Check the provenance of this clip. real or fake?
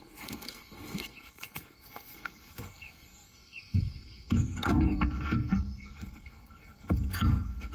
fake